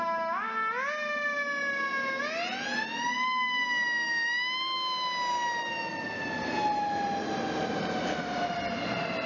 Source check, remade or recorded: recorded